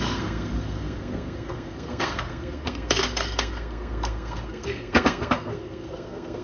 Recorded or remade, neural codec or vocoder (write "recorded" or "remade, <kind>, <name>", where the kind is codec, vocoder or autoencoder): remade, codec, SNAC